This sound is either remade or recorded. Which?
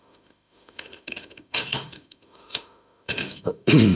remade